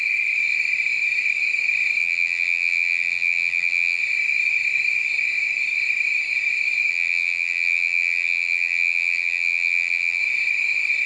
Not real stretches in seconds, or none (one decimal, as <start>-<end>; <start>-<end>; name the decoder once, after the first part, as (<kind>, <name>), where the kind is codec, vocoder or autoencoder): 2.0-4.0 (vocoder, BigVGAN v2); 6.9-10.2